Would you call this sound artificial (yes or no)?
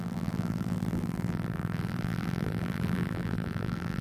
yes